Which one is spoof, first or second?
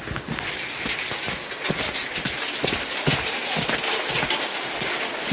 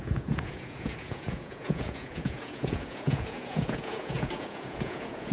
second